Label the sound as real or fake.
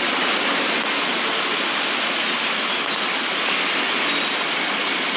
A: real